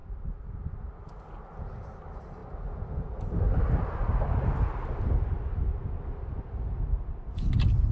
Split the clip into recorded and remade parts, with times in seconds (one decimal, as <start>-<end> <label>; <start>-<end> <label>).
0.0-1.1 remade; 1.1-7.9 recorded